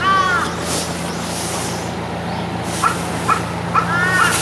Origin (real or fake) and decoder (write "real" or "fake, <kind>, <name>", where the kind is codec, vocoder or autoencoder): real